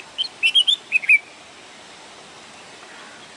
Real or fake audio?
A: real